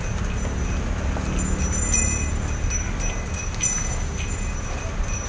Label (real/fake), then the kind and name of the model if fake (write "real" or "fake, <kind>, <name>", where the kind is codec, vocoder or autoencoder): real